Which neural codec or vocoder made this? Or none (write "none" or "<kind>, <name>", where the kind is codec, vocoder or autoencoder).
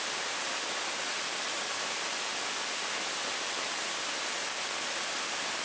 none